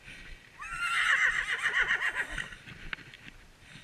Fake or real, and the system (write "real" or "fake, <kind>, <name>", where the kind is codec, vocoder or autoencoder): real